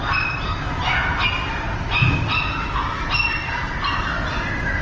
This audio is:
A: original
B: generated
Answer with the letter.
A